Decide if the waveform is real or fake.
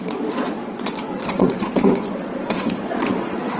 fake